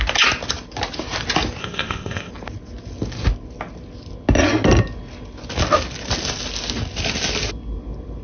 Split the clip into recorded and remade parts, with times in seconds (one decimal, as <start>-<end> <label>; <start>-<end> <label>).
0.0-1.6 recorded; 1.6-2.3 remade; 2.3-8.2 recorded